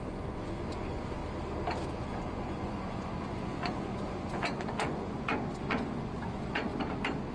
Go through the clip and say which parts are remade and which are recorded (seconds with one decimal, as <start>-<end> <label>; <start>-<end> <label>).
0.0-1.2 remade; 1.2-1.9 recorded; 1.9-6.7 remade; 6.7-7.3 recorded